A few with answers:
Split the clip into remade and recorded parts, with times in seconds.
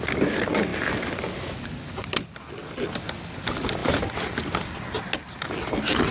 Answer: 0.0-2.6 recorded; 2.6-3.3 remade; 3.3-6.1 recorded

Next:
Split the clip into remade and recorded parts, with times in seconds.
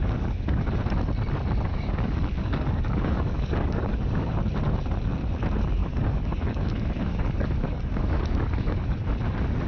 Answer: 0.0-0.7 remade; 0.7-1.7 recorded; 1.7-4.3 remade; 4.3-5.8 recorded; 5.8-9.1 remade; 9.1-9.7 recorded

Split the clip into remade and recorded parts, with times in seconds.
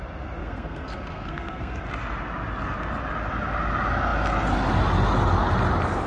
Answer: 0.0-0.4 recorded; 0.4-1.8 remade; 1.8-6.1 recorded